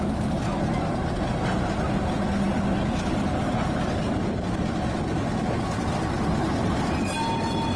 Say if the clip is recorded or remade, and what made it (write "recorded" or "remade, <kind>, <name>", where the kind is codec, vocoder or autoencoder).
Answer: recorded